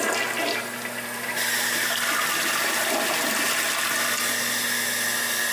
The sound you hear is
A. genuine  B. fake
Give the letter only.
A